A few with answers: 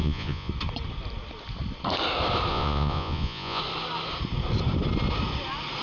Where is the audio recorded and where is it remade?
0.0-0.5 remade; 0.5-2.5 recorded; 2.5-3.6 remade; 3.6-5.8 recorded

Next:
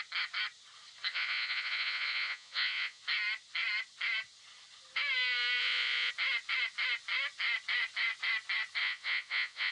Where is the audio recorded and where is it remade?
0.0-1.1 recorded; 1.1-3.0 remade; 3.0-5.6 recorded; 5.6-6.1 remade; 6.1-8.8 recorded; 8.8-9.7 remade

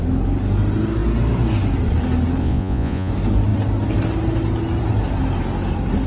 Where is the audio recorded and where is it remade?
0.0-2.4 recorded; 2.4-3.1 remade; 3.1-6.1 recorded

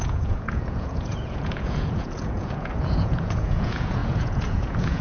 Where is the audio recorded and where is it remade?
0.0-5.0 remade

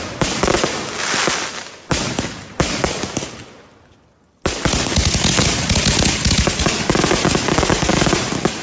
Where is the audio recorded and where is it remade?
0.0-8.6 recorded

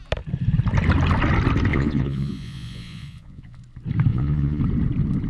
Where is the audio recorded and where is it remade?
0.0-1.7 recorded; 1.7-3.6 remade; 3.6-4.1 recorded; 4.1-4.6 remade; 4.6-5.3 recorded

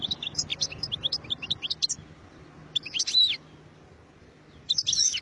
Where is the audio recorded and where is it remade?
0.0-5.2 recorded